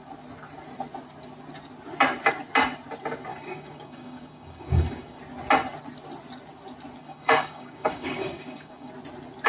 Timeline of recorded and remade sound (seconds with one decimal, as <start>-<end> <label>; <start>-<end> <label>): 0.0-3.3 recorded; 3.3-5.2 remade; 5.2-7.0 recorded; 7.0-8.9 remade; 8.9-9.5 recorded